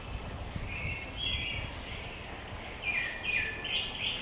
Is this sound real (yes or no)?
yes